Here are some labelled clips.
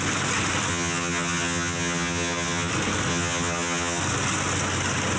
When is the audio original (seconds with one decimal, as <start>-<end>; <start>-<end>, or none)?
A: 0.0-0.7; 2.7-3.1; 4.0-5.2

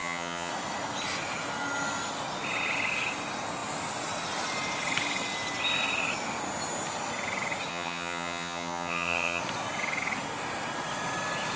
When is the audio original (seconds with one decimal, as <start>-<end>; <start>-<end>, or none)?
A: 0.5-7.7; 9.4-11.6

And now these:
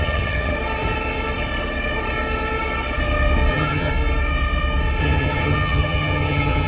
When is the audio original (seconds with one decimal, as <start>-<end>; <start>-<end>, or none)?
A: 0.5-3.5; 3.9-5.0

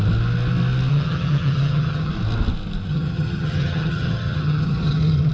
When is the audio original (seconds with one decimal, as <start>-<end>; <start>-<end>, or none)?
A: 0.0-0.9; 2.1-2.9

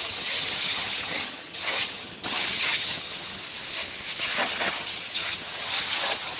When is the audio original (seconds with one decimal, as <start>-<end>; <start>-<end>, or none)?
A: 3.4-4.4

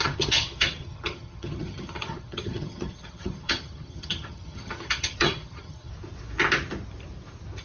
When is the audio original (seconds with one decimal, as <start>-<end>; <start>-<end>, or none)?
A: 5.9-7.6

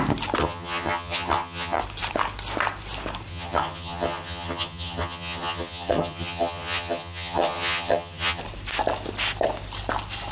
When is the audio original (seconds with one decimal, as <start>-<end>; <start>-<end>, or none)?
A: 0.0-0.4; 1.8-3.3; 8.4-10.3

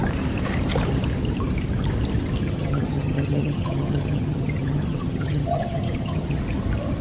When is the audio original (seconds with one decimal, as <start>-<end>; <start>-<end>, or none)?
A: 0.0-2.4; 6.4-7.0